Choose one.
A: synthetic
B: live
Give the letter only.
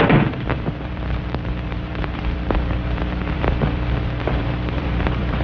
A